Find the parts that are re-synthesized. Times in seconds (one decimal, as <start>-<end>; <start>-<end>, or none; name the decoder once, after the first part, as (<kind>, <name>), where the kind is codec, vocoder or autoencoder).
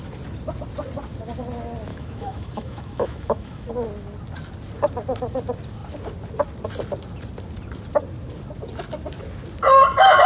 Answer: 1.9-3.7 (autoencoder, DAC-VAE)